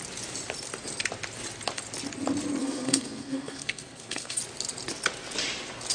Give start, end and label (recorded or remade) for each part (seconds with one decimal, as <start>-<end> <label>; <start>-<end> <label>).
0.0-2.6 recorded; 2.6-4.4 remade; 4.4-5.9 recorded